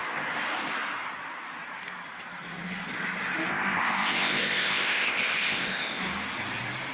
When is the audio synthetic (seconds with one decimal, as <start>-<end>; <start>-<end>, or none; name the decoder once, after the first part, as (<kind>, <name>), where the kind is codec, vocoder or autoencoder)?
3.5-6.0 (codec, ZipCodec)